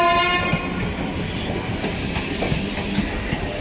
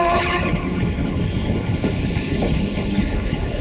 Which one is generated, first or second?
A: second